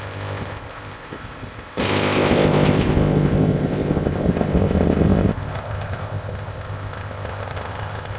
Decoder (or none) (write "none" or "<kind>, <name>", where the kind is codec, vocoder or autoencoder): codec, ZipCodec